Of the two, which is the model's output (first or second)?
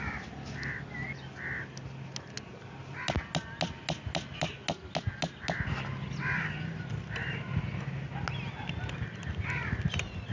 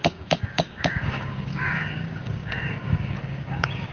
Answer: second